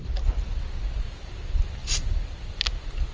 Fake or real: real